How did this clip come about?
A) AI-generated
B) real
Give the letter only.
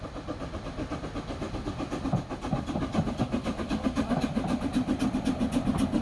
B